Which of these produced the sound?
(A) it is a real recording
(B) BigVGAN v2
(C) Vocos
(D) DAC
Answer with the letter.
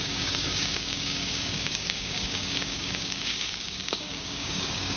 D